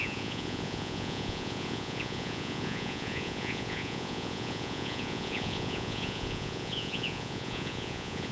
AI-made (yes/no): yes